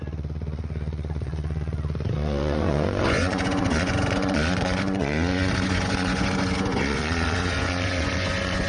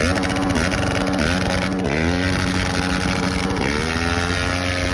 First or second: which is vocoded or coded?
first